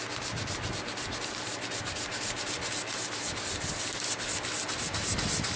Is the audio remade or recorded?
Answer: recorded